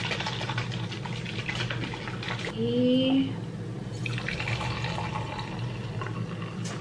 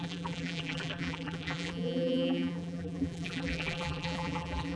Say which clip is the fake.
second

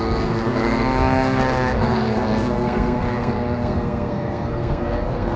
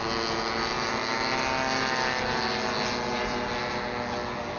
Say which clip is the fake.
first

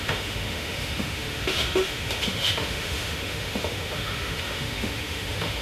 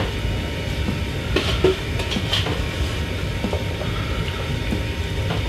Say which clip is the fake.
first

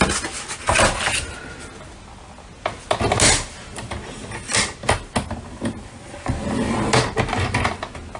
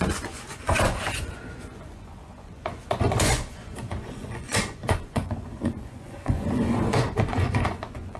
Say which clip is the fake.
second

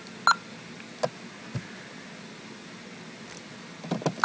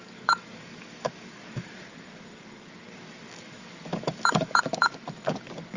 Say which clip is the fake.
second